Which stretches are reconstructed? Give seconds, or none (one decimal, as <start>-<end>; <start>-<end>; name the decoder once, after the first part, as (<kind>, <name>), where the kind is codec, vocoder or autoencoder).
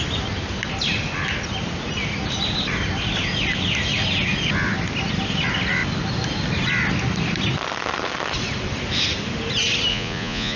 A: 9.9-10.6 (vocoder, Vocos)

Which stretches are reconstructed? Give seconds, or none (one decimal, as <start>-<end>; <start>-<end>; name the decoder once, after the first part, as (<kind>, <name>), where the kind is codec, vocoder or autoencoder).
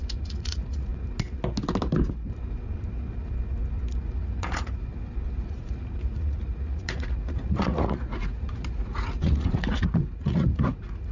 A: 0.0-0.9 (vocoder, Vocos); 4.0-4.9; 5.5-11.1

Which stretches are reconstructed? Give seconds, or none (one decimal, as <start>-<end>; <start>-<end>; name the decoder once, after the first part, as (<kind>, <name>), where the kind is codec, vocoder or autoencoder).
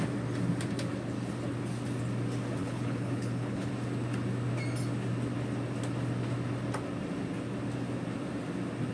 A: 2.6-3.7 (codec, HILCodec)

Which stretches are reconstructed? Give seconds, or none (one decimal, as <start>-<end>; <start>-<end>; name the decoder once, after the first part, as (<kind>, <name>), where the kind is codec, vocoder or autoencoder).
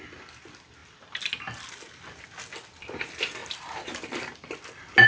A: 3.4-5.1 (vocoder, BigVGAN v2)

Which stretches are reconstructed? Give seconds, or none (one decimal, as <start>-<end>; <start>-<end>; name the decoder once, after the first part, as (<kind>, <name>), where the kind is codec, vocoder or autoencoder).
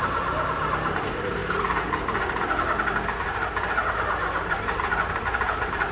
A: 0.0-1.4 (vocoder, BigVGAN v2); 4.4-5.9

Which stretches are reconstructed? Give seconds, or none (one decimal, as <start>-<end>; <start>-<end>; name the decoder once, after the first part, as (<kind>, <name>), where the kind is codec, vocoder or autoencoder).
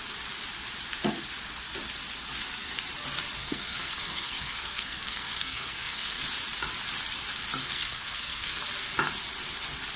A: 3.4-6.2 (codec, SNAC); 7.6-8.6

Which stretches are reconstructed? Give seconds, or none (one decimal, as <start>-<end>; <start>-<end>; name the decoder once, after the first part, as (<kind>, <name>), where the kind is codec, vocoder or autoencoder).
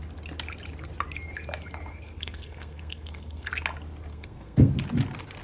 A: 1.9-3.5 (codec, SNAC); 4.1-4.7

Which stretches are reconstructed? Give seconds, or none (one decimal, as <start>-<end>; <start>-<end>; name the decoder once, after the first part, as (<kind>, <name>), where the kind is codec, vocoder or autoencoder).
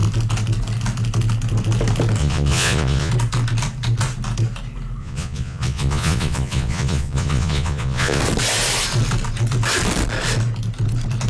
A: 2.2-3.1 (vocoder, Vocos); 5.0-8.2